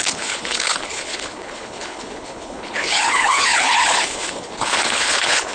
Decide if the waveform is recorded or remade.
remade